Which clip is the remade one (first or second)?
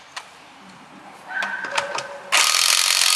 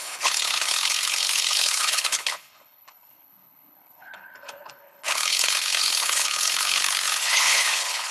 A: second